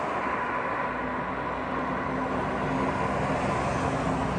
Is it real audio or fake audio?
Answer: real